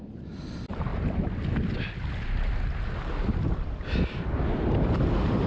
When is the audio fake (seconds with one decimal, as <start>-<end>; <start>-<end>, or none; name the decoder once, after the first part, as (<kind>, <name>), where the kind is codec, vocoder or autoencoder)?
none